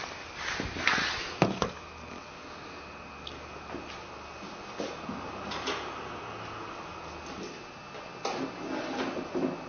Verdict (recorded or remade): recorded